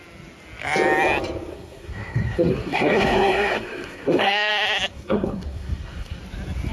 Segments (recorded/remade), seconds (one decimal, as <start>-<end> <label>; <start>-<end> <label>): 0.0-1.5 recorded; 1.5-4.5 remade; 4.5-4.9 recorded; 4.9-6.2 remade; 6.2-6.7 recorded